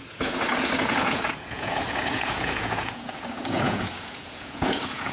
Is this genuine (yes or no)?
no